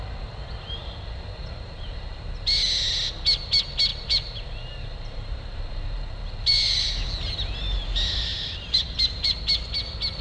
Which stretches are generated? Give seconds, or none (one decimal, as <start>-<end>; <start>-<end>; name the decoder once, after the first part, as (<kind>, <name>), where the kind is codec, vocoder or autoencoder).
0.8-2.2 (vocoder, BigVGAN v2); 3.9-6.9; 8.3-9.4